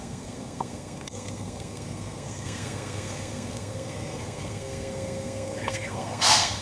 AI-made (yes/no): yes